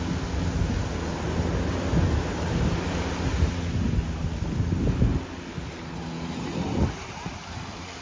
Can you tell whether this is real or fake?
real